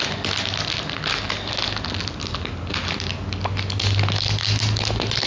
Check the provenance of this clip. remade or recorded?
recorded